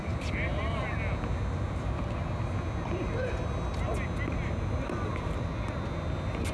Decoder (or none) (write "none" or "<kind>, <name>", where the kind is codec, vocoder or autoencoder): none